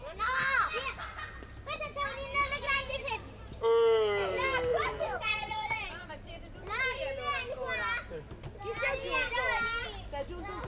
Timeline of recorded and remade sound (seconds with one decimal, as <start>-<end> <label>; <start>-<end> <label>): 0.0-4.7 recorded; 4.7-6.1 remade; 6.1-10.7 recorded

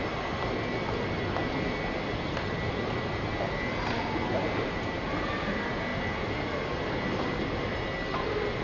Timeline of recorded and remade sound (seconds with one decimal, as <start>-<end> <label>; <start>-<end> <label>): 0.0-8.6 recorded

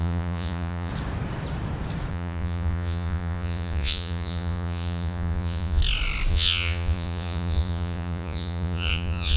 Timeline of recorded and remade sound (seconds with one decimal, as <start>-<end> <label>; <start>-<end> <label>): 0.0-0.9 remade; 0.9-2.1 recorded; 2.1-5.8 remade; 5.8-6.3 recorded; 6.3-9.4 remade

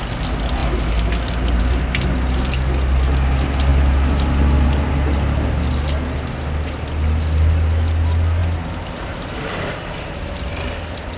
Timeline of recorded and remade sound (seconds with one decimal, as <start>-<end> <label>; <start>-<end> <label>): 0.0-11.2 recorded